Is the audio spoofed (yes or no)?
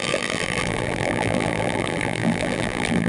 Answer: yes